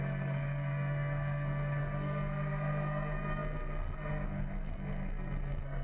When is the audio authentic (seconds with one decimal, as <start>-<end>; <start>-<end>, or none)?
none